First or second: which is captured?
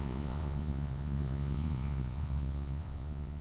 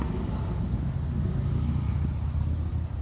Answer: second